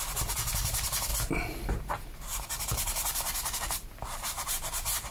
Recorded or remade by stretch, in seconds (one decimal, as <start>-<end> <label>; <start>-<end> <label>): 0.0-1.1 remade; 1.1-1.7 recorded; 1.7-5.1 remade